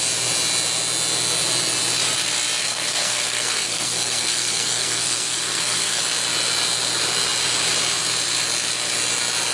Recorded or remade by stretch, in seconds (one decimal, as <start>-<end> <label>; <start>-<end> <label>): 0.0-2.6 recorded; 2.6-6.0 remade; 6.0-9.5 recorded